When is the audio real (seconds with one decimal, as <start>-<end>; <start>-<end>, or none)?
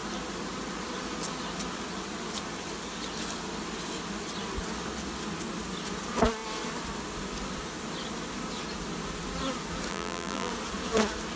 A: 0.0-9.9; 10.5-11.4